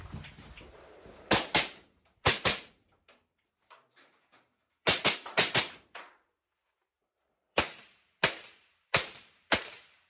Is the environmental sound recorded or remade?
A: remade